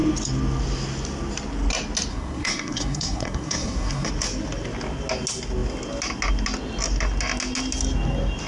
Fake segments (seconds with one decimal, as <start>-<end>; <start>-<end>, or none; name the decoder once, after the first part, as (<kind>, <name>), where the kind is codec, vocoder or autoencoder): 2.1-4.1 (codec, SNAC)